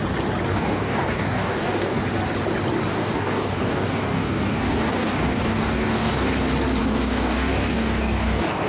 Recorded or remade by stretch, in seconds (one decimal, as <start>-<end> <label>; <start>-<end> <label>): 0.0-0.5 recorded; 0.5-2.0 remade; 2.0-2.9 recorded; 2.9-6.3 remade; 6.3-6.8 recorded; 6.8-8.7 remade